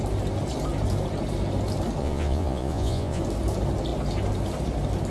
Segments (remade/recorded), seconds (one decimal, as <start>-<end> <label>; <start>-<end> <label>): 0.0-2.0 recorded; 2.0-3.2 remade; 3.2-5.1 recorded